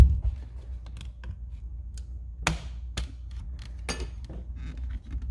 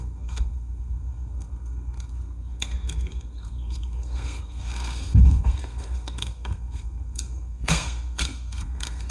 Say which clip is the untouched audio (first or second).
first